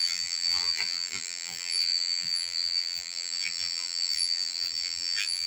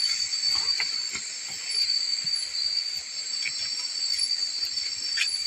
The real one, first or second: second